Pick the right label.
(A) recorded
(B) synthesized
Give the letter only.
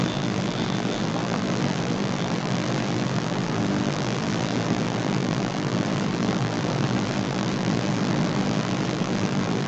B